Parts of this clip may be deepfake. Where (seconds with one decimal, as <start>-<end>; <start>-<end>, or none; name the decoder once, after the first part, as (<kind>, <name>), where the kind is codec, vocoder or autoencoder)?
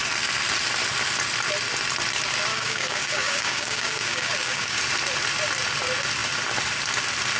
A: 2.5-4.8 (codec, DAC)